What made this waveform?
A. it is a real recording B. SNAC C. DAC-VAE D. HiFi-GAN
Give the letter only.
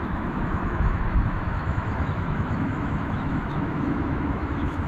C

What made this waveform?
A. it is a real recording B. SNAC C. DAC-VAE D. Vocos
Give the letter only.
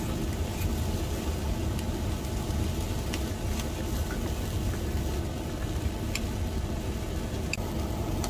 A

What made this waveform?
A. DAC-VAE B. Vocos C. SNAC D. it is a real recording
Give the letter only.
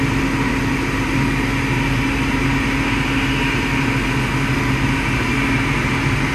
D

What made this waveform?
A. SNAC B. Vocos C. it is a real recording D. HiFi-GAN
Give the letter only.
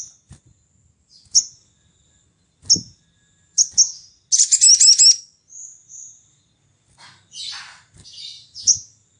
C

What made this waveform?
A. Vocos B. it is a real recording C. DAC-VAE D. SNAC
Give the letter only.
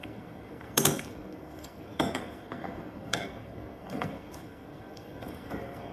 D